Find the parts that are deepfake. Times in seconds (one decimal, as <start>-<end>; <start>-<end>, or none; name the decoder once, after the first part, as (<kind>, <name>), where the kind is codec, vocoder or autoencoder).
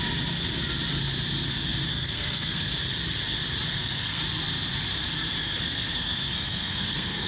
1.9-2.7 (codec, SNAC); 3.7-4.2; 5.4-7.3